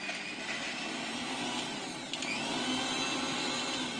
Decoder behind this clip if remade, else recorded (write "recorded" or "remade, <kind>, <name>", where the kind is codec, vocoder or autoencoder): recorded